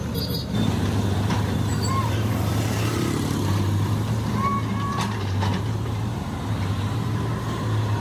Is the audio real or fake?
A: fake